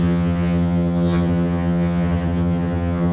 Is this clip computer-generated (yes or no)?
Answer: yes